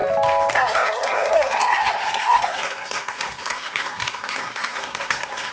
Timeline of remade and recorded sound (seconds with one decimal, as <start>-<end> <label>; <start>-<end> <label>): 0.0-0.5 recorded; 0.5-5.5 remade